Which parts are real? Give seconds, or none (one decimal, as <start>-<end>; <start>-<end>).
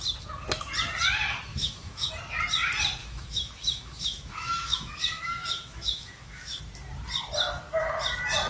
0.0-1.5; 2.1-3.0; 6.6-8.5